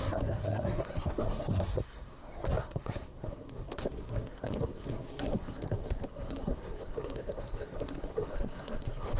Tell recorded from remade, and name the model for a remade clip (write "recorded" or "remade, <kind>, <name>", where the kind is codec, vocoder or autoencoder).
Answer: remade, codec, SNAC